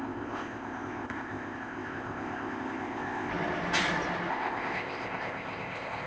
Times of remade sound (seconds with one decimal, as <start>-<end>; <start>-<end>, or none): 0.0-3.3; 4.3-6.1